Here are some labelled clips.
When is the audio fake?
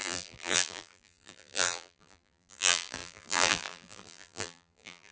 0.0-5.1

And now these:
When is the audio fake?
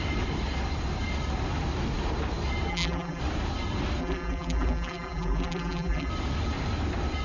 2.7-3.2; 4.0-6.1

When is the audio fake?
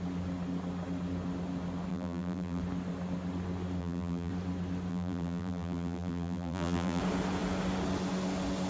1.9-2.6; 3.8-4.3; 4.9-7.0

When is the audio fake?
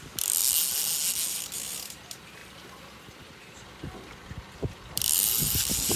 0.0-0.4; 1.3-2.4; 4.1-6.0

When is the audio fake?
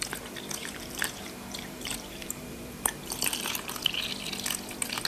0.6-3.7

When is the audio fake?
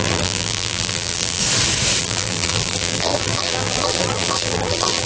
0.0-1.4; 2.0-5.1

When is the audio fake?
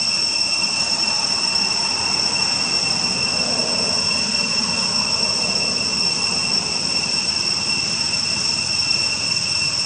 none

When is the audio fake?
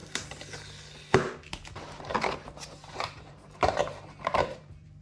2.9-5.0